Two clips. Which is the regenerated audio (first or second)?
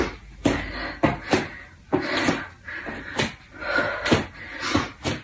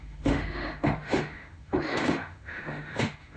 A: second